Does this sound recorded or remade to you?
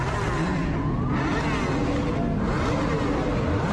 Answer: recorded